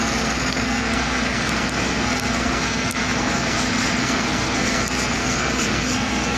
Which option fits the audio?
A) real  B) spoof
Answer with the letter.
B